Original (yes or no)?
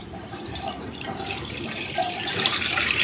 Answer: no